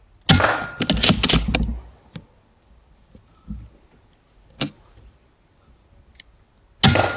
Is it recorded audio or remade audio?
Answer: recorded